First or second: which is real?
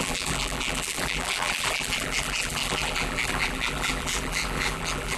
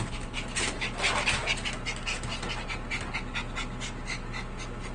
second